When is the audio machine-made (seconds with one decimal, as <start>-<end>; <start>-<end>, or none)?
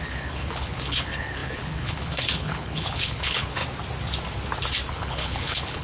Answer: 0.0-3.6; 4.9-5.8